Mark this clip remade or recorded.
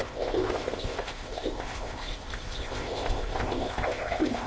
remade